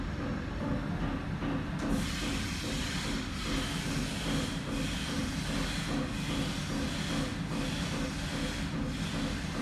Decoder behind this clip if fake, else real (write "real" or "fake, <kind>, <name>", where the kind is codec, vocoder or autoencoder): real